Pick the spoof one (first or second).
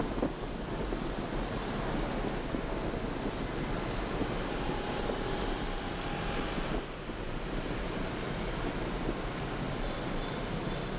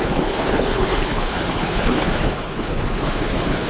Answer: second